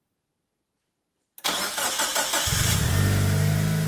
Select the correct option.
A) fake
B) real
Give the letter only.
B